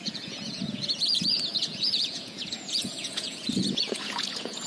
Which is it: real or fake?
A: fake